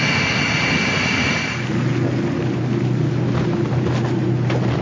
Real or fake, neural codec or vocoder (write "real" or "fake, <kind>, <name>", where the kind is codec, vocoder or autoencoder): real